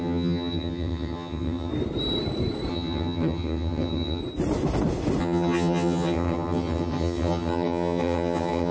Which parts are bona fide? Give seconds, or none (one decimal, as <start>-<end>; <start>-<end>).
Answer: 1.7-2.7; 4.2-5.2